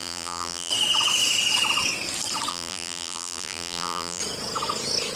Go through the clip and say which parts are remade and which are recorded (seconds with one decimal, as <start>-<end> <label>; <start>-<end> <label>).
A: 0.0-0.7 remade; 0.7-2.5 recorded; 2.5-4.2 remade; 4.2-5.2 recorded